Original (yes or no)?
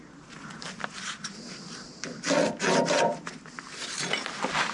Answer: yes